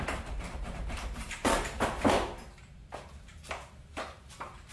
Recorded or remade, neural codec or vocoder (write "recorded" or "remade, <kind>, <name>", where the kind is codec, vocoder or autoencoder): remade, vocoder, BigVGAN v2